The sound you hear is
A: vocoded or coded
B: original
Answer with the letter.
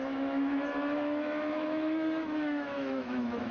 A